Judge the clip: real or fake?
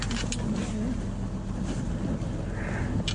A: real